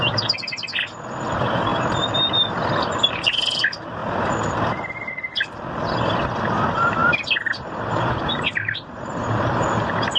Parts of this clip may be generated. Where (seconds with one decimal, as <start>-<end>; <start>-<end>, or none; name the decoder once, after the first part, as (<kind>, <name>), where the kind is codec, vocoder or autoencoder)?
none